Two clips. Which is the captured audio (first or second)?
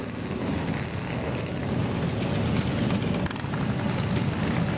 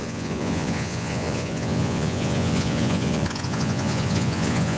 first